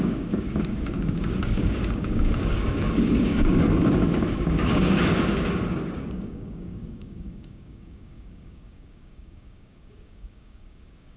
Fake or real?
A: fake